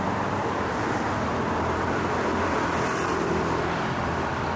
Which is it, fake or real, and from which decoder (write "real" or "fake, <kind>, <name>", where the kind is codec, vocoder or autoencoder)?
fake, vocoder, BigVGAN v2